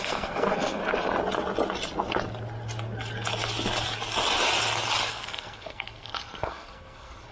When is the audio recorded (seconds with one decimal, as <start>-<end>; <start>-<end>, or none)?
0.8-5.1